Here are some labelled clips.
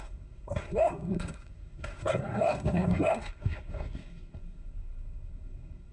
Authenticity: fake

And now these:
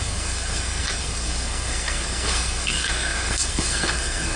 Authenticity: fake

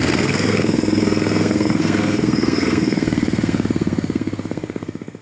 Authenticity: fake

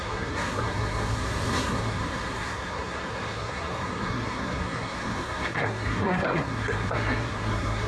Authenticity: fake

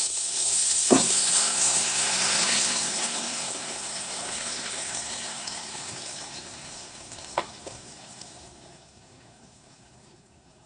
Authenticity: fake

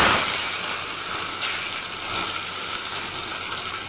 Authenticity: real